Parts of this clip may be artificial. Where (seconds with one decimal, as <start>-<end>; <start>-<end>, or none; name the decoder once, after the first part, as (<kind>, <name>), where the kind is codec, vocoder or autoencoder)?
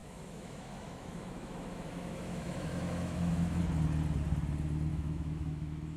0.0-3.6 (autoencoder, DAC-VAE); 4.9-6.0